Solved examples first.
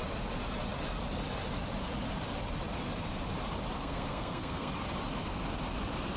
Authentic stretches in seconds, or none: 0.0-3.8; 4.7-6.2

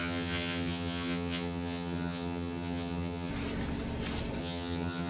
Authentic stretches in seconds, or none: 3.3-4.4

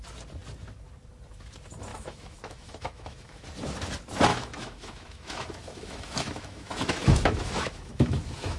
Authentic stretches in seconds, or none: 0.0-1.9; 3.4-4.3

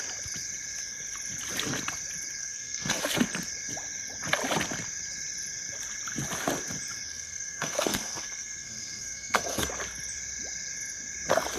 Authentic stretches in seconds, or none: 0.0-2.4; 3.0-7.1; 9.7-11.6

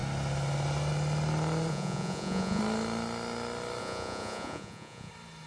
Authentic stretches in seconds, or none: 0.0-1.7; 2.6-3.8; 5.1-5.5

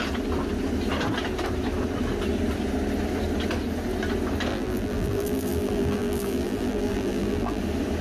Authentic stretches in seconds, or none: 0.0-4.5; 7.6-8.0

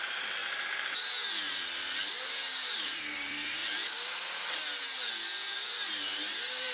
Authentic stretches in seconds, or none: 0.4-2.1; 3.6-5.6

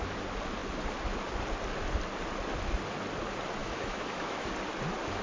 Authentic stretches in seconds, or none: 0.0-3.6; 4.5-5.2